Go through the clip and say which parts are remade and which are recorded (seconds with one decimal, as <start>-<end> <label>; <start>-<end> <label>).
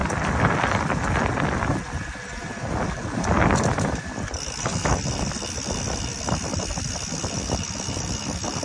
0.0-8.6 recorded